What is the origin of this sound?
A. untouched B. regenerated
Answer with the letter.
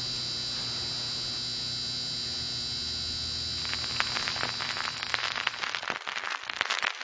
A